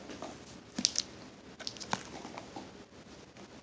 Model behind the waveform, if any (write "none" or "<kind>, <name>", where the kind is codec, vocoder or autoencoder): none